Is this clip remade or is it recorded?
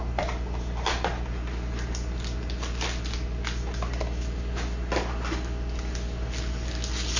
recorded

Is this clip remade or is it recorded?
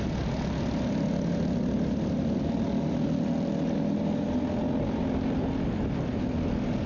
recorded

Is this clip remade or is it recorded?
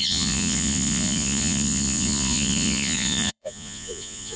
remade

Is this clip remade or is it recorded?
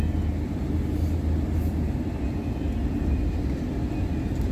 recorded